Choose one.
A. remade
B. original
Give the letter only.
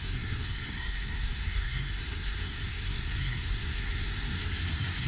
A